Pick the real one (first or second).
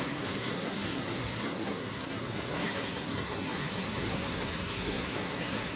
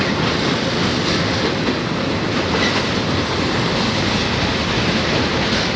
second